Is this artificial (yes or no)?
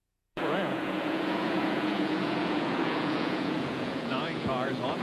yes